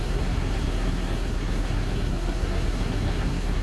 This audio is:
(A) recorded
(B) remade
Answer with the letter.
B